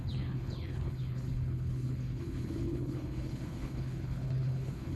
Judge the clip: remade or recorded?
remade